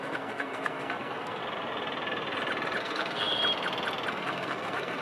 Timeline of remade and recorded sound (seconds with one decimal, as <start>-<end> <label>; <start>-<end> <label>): 0.0-1.4 remade; 1.4-2.8 recorded; 2.8-3.4 remade; 3.4-4.1 recorded; 4.1-5.0 remade